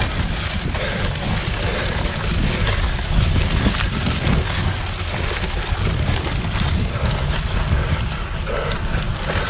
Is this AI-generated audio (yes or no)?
no